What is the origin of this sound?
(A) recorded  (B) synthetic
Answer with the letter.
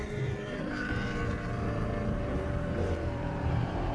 B